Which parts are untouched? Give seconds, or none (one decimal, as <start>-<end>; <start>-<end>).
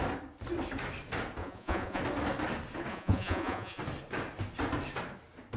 0.0-1.4; 2.0-2.9; 3.8-5.6